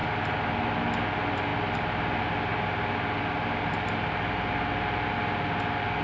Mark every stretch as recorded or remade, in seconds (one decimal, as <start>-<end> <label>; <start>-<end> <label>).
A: 0.0-6.0 recorded